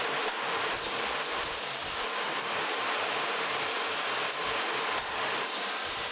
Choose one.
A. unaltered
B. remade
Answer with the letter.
A